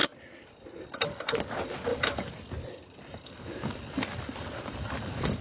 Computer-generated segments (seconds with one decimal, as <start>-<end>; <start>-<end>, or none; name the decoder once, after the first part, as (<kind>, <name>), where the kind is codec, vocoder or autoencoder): 0.8-5.4 (vocoder, BigVGAN v2)